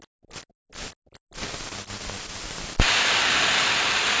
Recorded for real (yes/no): yes